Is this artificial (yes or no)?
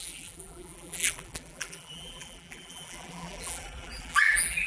yes